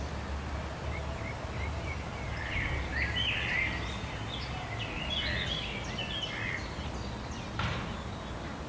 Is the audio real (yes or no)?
yes